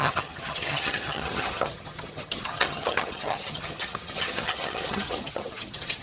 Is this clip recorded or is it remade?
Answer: remade